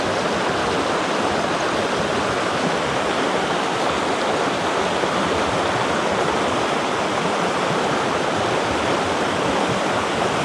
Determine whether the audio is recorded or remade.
recorded